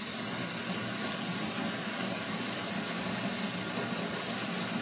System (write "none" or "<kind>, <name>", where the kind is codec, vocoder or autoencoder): none